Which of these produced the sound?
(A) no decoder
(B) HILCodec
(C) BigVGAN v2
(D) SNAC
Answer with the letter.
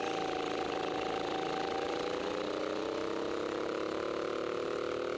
A